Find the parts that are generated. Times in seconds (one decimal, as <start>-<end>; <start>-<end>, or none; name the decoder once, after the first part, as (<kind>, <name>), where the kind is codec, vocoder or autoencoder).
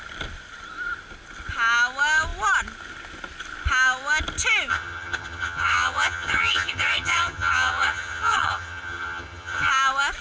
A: 4.7-9.7 (vocoder, HiFi-GAN)